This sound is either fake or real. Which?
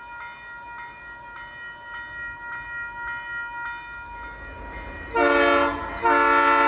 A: real